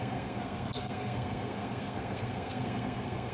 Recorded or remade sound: remade